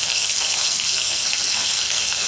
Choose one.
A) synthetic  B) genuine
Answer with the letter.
A